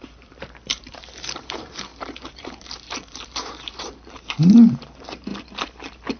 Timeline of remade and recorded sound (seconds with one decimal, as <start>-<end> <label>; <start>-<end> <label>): 0.0-5.3 remade; 5.3-6.2 recorded